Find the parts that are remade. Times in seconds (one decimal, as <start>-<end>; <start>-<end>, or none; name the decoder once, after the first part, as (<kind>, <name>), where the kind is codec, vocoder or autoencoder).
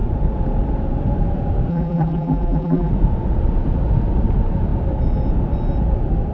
1.7-2.9 (vocoder, BigVGAN v2)